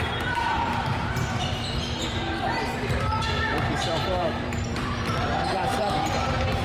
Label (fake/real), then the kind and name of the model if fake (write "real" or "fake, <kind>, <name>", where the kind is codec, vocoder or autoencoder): fake, vocoder, BigVGAN v2